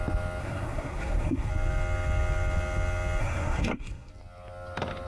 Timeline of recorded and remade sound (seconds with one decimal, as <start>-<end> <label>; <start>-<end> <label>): 0.0-0.4 recorded; 0.4-1.5 remade; 1.5-3.2 recorded; 3.2-4.1 remade; 4.1-5.1 recorded